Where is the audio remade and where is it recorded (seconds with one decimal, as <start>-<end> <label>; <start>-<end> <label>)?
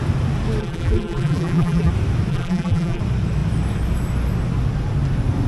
0.0-0.6 recorded; 0.6-1.9 remade; 1.9-2.3 recorded; 2.3-3.0 remade; 3.0-5.5 recorded